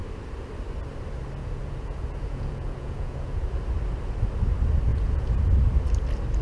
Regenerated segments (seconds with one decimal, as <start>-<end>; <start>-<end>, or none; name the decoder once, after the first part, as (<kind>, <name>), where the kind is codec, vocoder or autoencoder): 1.4-3.5 (vocoder, Vocos); 4.9-5.4